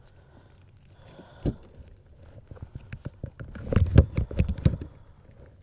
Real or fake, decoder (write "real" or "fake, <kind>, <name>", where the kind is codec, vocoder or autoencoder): real